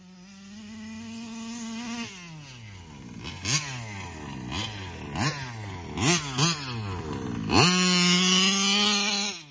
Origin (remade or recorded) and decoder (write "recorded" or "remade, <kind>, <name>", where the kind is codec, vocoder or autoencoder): recorded